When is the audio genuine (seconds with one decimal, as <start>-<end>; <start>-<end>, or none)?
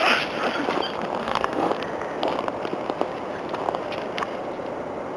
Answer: 0.0-1.2; 1.7-5.2